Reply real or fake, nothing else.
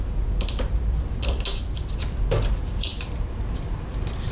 real